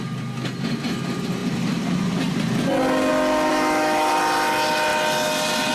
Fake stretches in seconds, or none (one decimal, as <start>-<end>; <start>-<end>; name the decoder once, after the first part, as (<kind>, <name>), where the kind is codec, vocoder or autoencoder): 3.5-4.1 (autoencoder, DAC-VAE)